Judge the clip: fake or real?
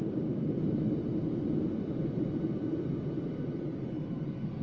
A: real